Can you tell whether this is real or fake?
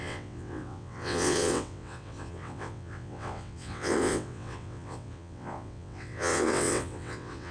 fake